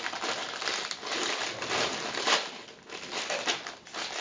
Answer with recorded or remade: recorded